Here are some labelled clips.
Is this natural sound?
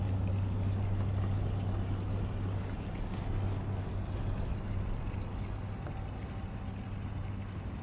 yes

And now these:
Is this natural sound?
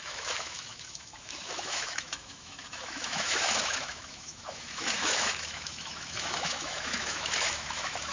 no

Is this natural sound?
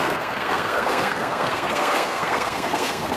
no